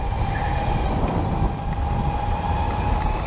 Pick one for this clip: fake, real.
real